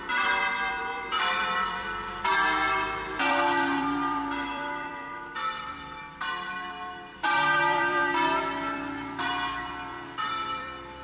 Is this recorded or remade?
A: remade